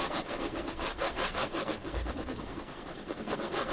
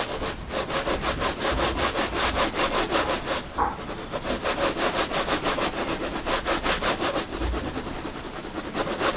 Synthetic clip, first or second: first